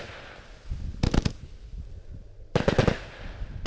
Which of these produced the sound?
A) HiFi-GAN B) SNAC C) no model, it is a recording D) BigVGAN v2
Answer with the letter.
C